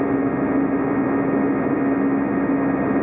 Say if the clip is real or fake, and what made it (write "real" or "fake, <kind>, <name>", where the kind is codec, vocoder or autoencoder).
real